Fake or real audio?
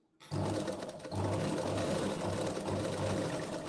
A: real